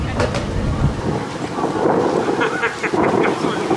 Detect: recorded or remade remade